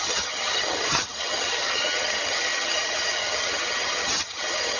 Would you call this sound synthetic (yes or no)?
yes